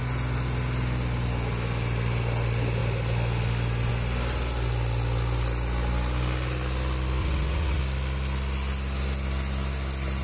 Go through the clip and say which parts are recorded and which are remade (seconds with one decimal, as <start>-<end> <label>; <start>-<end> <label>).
0.0-7.2 recorded; 7.2-7.8 remade; 7.8-10.2 recorded